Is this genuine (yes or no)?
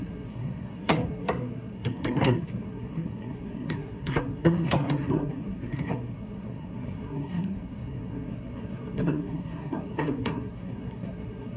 no